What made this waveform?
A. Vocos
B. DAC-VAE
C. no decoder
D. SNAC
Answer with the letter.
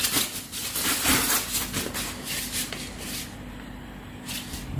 C